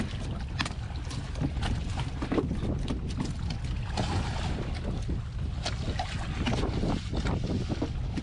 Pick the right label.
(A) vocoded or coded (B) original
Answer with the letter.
B